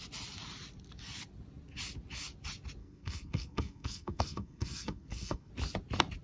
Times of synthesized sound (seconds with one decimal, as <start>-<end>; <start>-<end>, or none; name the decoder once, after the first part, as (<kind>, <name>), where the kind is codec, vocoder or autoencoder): 2.8-5.5 (codec, SNAC)